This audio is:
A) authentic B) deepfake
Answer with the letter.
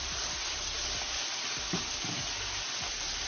A